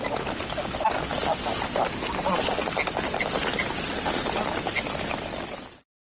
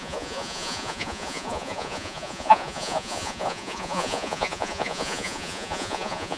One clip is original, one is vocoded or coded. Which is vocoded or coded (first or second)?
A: second